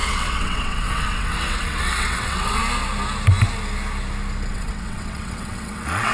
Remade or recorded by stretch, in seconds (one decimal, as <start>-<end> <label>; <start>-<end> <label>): 0.0-2.6 remade; 2.6-4.5 recorded; 4.5-6.1 remade